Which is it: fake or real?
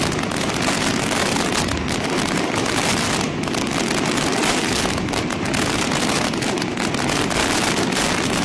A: real